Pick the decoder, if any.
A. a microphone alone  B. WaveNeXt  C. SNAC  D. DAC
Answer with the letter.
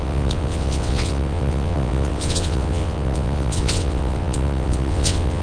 B